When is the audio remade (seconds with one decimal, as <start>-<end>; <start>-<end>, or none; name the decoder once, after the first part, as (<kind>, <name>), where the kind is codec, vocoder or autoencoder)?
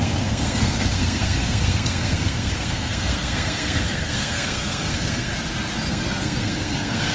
0.0-5.3 (codec, SNAC); 5.9-7.1